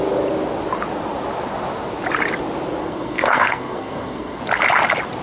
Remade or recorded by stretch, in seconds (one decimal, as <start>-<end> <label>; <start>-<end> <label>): 0.0-2.8 recorded; 2.8-4.4 remade; 4.4-5.2 recorded